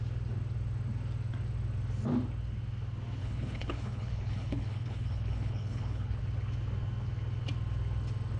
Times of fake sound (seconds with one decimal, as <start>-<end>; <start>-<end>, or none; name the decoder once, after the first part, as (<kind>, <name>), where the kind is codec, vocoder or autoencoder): 3.2-6.2 (codec, HILCodec)